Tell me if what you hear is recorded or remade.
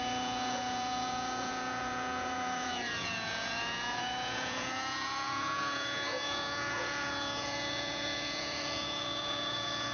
remade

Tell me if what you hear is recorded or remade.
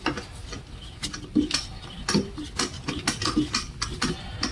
recorded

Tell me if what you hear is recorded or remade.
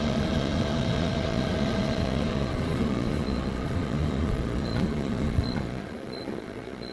remade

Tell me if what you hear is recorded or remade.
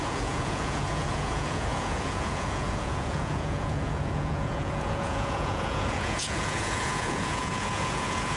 remade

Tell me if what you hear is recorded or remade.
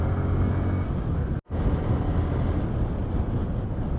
recorded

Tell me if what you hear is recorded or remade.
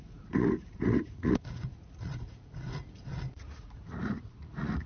remade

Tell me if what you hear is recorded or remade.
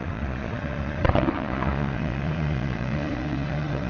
remade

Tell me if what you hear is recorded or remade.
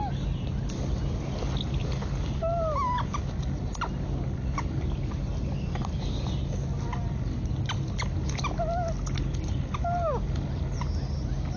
recorded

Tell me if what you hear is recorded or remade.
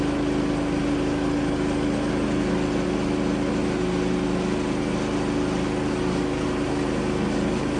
recorded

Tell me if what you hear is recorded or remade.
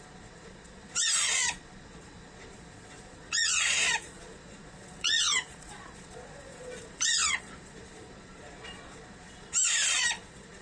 remade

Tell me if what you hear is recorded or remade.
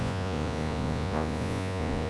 remade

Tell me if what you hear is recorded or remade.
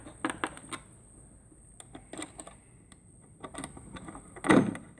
recorded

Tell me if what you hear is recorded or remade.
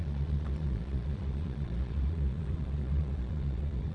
remade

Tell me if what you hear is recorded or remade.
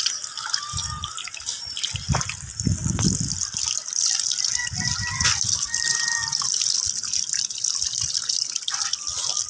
recorded